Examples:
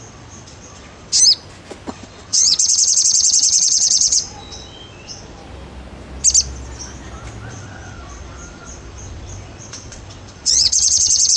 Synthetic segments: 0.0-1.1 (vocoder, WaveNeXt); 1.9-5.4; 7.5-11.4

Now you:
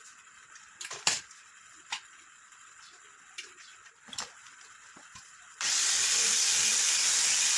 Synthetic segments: none

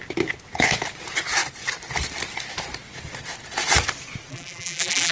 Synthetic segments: 4.3-5.1 (vocoder, BigVGAN v2)

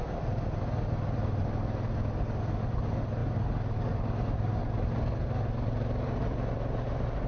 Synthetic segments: none

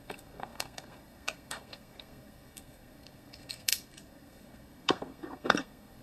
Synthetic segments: 0.0-6.0 (codec, SNAC)